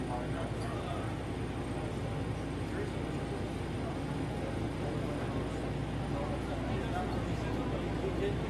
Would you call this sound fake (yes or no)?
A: no